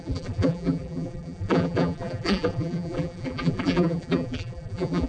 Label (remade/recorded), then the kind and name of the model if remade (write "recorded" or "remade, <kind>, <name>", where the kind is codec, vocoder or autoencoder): remade, vocoder, BigVGAN v2